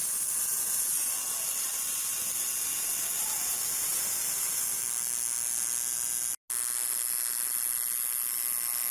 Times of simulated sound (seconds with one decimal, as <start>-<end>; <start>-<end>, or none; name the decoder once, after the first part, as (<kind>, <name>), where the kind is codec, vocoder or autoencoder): 0.0-4.8 (vocoder, BigVGAN v2)